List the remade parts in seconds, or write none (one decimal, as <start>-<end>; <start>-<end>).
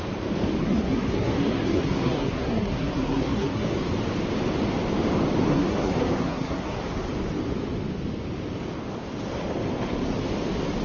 0.6-3.9; 5.5-6.8